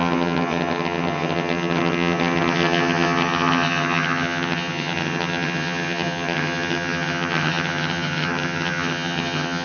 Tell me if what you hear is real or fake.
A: fake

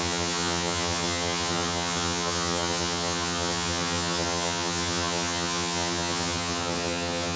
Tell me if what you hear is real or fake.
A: fake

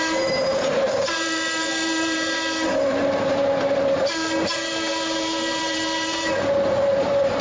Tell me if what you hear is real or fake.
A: fake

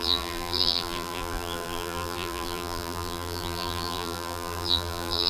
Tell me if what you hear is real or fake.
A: fake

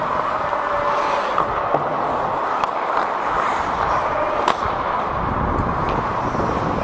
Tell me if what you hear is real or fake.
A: real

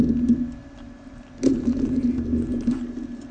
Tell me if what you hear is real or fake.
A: real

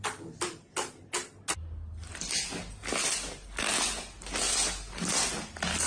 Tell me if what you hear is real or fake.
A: real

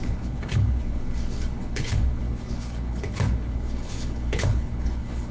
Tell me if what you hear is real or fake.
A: fake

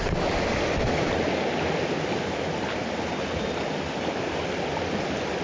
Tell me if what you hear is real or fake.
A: real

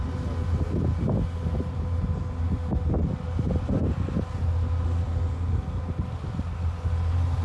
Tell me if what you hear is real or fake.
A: real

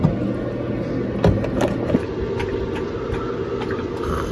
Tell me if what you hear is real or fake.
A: real